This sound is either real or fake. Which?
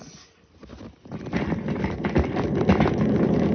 real